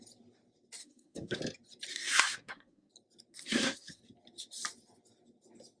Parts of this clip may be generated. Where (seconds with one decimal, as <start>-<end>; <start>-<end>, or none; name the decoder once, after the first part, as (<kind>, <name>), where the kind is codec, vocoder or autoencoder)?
0.8-1.4 (codec, SNAC); 1.9-2.9; 3.3-4.0